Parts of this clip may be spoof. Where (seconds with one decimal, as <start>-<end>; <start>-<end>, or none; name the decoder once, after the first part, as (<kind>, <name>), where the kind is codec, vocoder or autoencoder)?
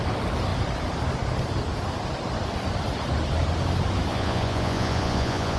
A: 4.1-5.6 (vocoder, Vocos)